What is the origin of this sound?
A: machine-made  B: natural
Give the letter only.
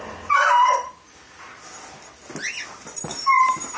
B